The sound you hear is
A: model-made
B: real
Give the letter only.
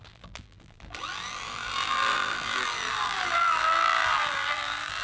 A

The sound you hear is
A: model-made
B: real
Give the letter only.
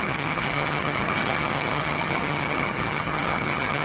A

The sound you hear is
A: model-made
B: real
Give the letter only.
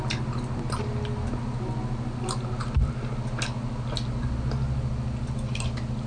B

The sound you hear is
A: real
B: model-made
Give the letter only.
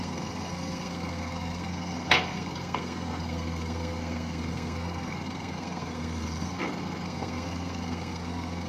B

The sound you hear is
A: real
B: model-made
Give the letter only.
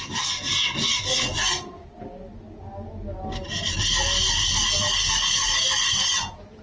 A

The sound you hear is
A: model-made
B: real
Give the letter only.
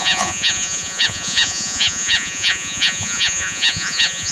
A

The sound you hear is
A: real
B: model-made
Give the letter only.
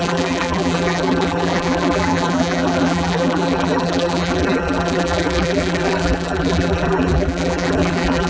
B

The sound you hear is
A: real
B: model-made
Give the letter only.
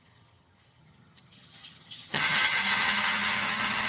B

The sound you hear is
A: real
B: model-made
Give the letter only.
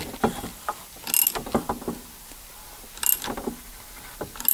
A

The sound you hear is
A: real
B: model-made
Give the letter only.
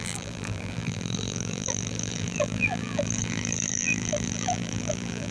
B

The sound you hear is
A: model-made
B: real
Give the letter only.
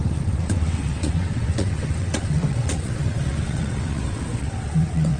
A